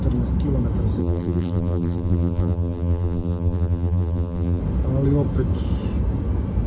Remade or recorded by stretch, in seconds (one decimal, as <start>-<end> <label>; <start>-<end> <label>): 0.0-1.0 recorded; 1.0-4.6 remade; 4.6-6.7 recorded

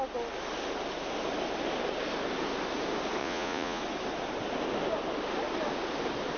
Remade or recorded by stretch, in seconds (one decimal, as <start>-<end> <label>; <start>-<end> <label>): 0.0-3.2 recorded; 3.2-3.8 remade; 3.8-6.4 recorded

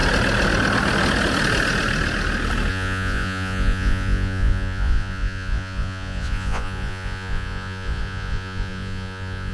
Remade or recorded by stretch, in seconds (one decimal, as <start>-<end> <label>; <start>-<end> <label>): 0.0-2.7 recorded; 2.7-9.5 remade

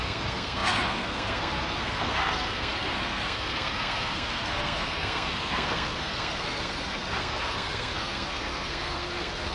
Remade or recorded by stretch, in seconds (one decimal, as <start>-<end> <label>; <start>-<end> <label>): 0.0-9.5 remade

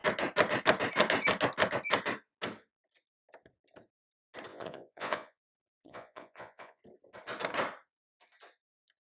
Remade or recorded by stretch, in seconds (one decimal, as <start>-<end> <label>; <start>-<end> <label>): 0.0-4.5 recorded; 4.5-6.8 remade; 6.8-9.0 recorded

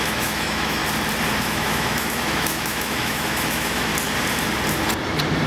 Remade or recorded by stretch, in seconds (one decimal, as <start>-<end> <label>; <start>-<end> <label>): 0.0-0.8 remade; 0.8-1.4 recorded; 1.4-3.9 remade; 3.9-5.5 recorded